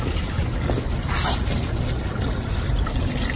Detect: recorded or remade recorded